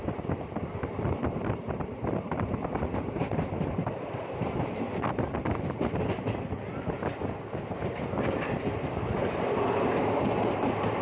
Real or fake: real